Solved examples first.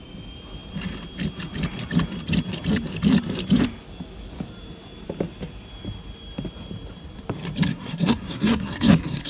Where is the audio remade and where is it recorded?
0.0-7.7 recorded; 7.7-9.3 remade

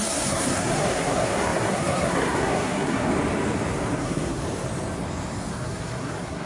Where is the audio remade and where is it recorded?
0.0-3.1 remade; 3.1-4.0 recorded; 4.0-4.4 remade; 4.4-5.5 recorded; 5.5-6.5 remade

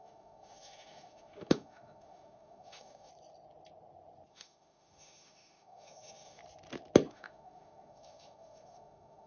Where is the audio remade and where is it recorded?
0.0-3.1 remade; 3.1-4.3 recorded; 4.3-6.4 remade; 6.4-7.1 recorded; 7.1-9.3 remade

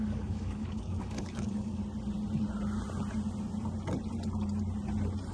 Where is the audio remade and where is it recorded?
0.0-1.8 remade; 1.8-5.3 recorded